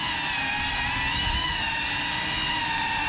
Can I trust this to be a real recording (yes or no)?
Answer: yes